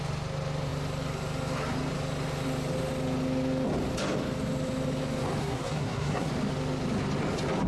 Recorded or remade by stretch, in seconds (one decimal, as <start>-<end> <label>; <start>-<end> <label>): 0.0-5.4 recorded; 5.4-6.3 remade; 6.3-7.7 recorded